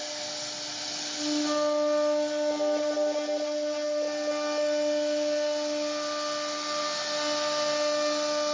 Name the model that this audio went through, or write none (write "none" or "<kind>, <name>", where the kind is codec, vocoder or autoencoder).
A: none